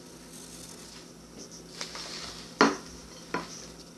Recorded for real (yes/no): yes